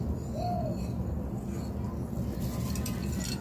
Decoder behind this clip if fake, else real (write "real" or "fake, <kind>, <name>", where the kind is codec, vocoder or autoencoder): real